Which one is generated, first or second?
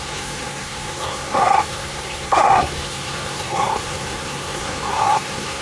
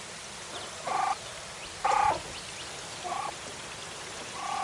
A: first